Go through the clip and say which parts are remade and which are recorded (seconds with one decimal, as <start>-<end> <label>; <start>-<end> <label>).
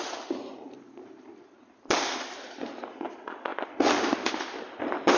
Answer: 0.0-0.5 recorded; 0.5-2.4 remade; 2.4-3.5 recorded; 3.5-5.2 remade